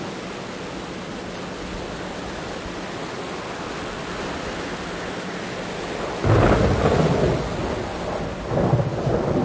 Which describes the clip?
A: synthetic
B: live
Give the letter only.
B